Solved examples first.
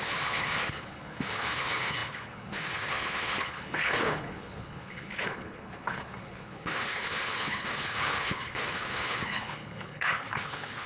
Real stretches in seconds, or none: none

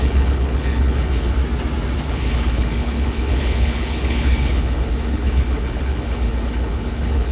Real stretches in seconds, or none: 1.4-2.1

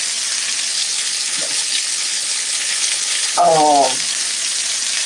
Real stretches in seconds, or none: 0.0-0.7; 3.5-5.1

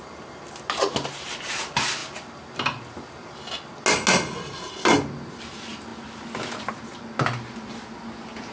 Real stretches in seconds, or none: 0.0-8.5

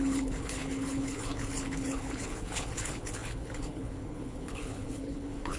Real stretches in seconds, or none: none